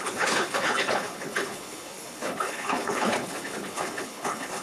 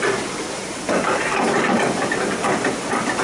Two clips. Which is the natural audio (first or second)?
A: second